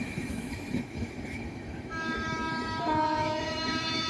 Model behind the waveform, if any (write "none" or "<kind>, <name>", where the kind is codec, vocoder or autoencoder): autoencoder, DAC-VAE